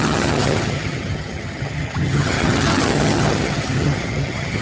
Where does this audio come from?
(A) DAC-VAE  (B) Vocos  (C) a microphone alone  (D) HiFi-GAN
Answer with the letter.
D